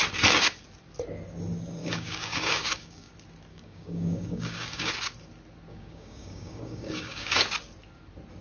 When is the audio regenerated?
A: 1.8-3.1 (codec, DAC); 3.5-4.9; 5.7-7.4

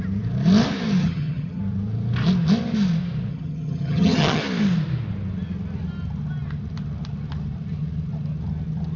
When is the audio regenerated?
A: 1.0-1.6 (vocoder, HiFi-GAN); 3.3-4.4

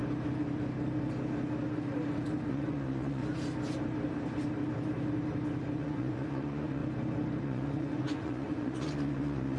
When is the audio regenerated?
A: 2.5-3.2 (vocoder, Vocos); 5.8-6.8; 7.4-9.6

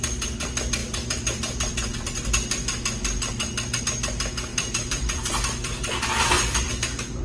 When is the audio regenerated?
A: 4.5-6.7 (vocoder, BigVGAN v2)